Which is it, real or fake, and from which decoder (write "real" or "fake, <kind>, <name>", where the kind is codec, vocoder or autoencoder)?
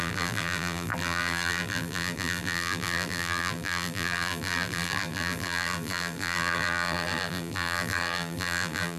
fake, vocoder, BigVGAN v2